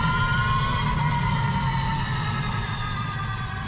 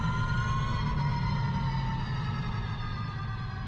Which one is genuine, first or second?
second